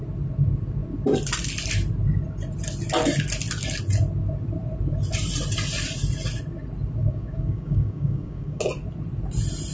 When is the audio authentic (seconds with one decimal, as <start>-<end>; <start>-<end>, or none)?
0.0-7.0; 8.6-9.7